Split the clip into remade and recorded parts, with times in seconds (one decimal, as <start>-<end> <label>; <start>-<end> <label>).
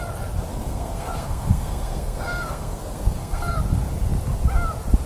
0.0-0.5 recorded; 0.5-3.6 remade; 3.6-5.1 recorded